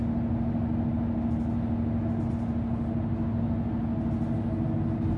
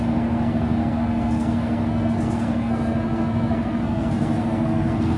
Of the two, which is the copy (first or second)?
second